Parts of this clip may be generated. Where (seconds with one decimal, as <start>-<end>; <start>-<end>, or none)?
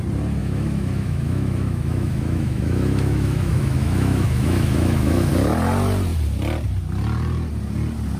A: 0.4-5.3